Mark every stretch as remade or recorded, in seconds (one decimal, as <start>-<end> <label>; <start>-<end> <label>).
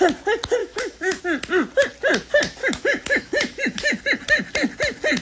0.0-0.6 recorded; 0.6-1.2 remade; 1.2-2.6 recorded; 2.6-4.0 remade; 4.0-5.2 recorded